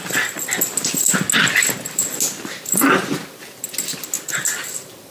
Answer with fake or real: real